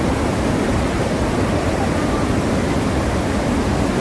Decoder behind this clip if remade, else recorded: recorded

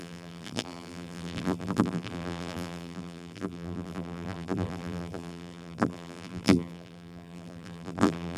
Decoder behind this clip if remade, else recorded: remade, vocoder, BigVGAN v2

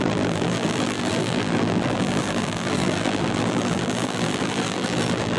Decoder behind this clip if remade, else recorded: remade, vocoder, BigVGAN v2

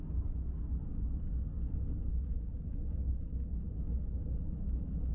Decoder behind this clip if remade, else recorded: recorded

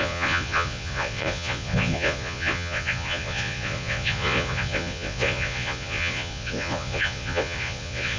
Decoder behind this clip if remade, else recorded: remade, vocoder, Vocos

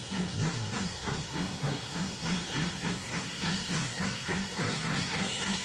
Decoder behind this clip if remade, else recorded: remade, codec, SNAC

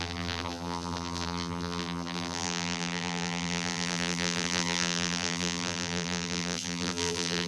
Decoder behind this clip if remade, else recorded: remade, vocoder, BigVGAN v2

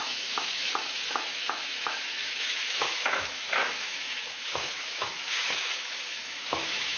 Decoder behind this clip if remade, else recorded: remade, autoencoder, DAC-VAE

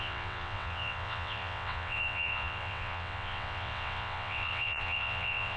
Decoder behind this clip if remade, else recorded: remade, vocoder, WaveNeXt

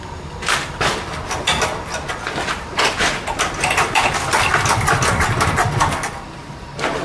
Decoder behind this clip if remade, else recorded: recorded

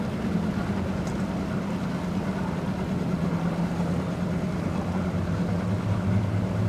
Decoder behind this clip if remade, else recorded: recorded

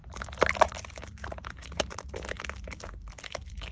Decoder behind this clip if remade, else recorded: remade, vocoder, BigVGAN v2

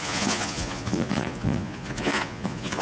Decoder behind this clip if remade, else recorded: remade, vocoder, Vocos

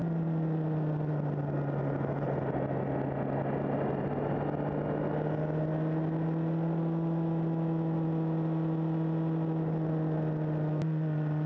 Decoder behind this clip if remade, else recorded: recorded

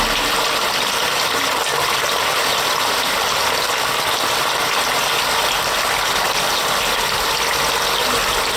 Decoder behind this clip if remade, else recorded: recorded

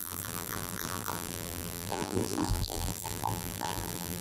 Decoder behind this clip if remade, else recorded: remade, vocoder, BigVGAN v2